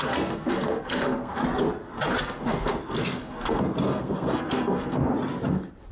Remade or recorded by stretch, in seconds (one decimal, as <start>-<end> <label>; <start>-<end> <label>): 0.0-1.4 remade; 1.4-2.2 recorded; 2.2-5.1 remade; 5.1-5.9 recorded